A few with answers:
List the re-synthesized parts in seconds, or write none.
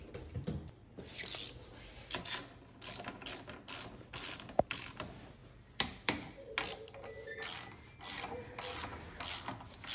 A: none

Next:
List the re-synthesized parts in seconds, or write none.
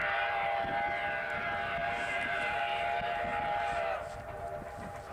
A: 0.0-0.7 (vocoder, BigVGAN v2); 1.8-2.6; 3.3-4.4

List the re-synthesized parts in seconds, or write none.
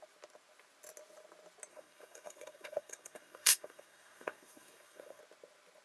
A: 1.7-5.2 (codec, SNAC)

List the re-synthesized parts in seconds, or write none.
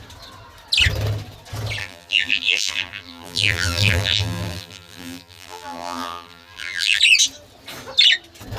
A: 1.8-7.0 (vocoder, BigVGAN v2)